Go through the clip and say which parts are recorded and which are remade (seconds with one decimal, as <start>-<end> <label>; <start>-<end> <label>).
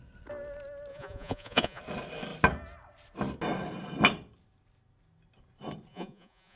0.0-0.9 recorded; 0.9-1.8 remade; 1.8-5.9 recorded; 5.9-6.6 remade